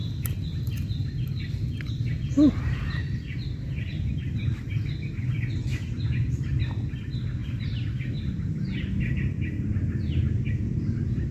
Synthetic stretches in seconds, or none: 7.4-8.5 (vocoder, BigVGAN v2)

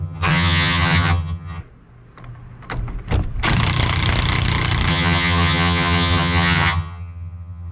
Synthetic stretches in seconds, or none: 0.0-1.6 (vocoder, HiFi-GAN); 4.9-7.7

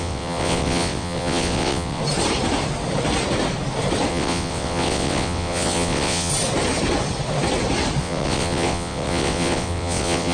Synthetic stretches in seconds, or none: 0.0-2.0 (vocoder, WaveNeXt); 4.1-6.3; 8.0-10.3